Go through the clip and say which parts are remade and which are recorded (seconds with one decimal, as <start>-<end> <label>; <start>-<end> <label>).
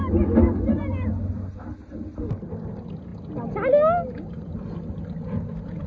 0.0-5.9 recorded